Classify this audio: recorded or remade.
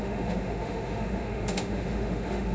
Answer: remade